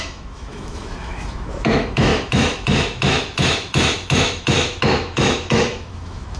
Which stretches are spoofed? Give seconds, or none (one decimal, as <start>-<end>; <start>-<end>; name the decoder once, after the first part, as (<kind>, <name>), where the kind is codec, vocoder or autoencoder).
0.0-6.4 (autoencoder, DAC-VAE)